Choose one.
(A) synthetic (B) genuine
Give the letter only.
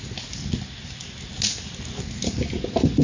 B